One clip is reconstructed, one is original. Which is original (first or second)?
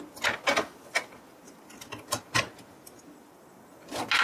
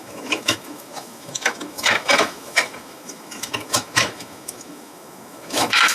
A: first